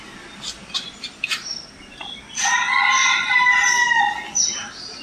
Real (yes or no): yes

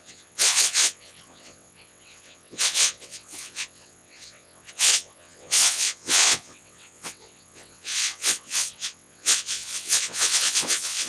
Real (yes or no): no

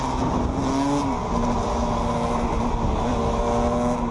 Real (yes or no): yes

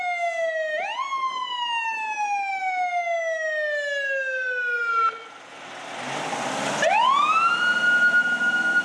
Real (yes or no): yes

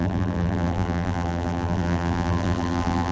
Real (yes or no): no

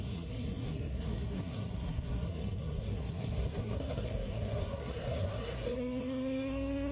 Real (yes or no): no